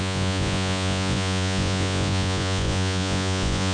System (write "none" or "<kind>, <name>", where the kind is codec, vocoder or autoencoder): vocoder, Vocos